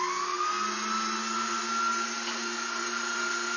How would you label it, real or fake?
real